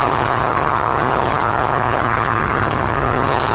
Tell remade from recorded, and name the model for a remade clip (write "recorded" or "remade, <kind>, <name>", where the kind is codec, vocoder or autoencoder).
remade, vocoder, HiFi-GAN